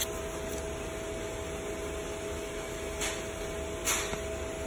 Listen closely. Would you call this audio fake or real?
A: real